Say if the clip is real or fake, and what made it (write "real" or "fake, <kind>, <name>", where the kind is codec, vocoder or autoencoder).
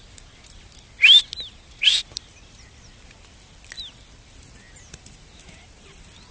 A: real